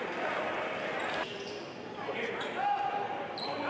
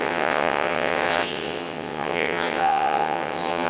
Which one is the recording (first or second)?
first